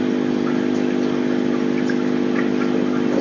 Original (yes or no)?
yes